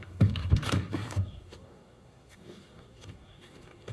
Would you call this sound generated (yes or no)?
yes